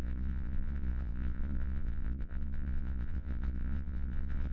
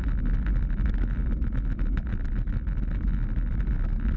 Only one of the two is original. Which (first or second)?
second